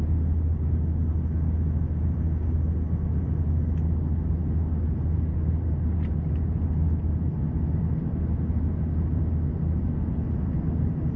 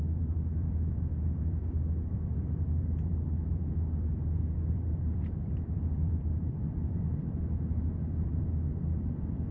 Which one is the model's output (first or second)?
second